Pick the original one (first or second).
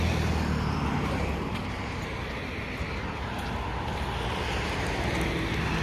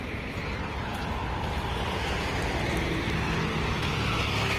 first